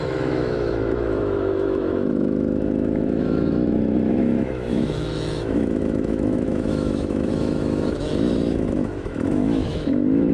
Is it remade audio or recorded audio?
remade